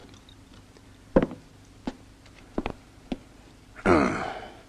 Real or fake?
real